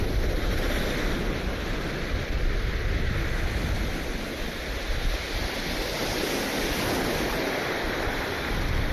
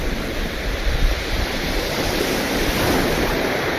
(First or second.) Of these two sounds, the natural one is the first